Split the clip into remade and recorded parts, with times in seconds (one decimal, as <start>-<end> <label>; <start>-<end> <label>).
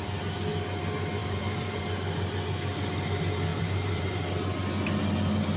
0.0-1.2 recorded; 1.2-1.8 remade; 1.8-3.5 recorded; 3.5-4.1 remade; 4.1-5.6 recorded